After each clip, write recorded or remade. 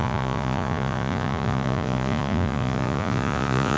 remade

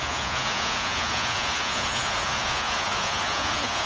remade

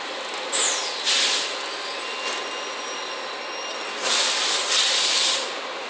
recorded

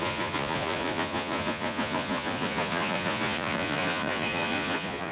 remade